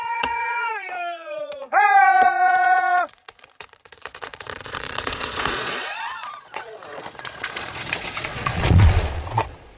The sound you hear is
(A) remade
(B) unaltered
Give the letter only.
A